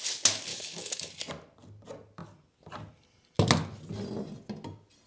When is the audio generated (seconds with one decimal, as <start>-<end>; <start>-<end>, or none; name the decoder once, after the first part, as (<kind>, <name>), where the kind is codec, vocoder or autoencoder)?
0.5-1.1 (autoencoder, DAC-VAE)